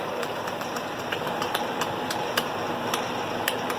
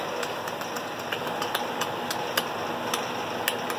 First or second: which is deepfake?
first